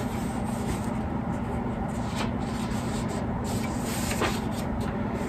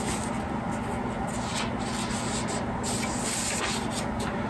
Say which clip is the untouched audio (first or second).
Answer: second